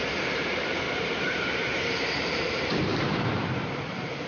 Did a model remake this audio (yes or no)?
yes